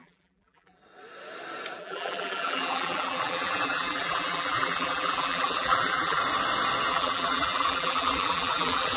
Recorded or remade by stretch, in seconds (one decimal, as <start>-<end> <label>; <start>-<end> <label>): 0.0-0.8 remade; 0.8-1.8 recorded; 1.8-6.2 remade; 6.2-6.9 recorded; 6.9-9.0 remade